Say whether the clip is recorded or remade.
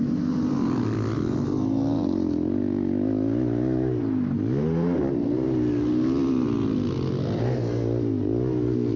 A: recorded